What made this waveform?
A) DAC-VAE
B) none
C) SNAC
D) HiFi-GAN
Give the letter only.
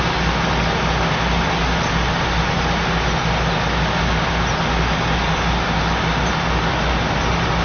B